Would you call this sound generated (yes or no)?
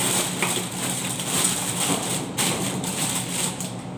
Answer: yes